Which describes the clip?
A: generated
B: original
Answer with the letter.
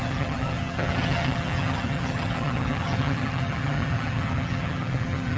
A